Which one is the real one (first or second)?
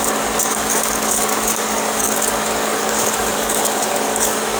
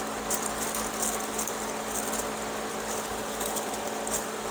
second